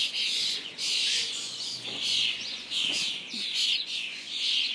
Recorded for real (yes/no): no